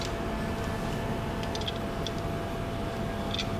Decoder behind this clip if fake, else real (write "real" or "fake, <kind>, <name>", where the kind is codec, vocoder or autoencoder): real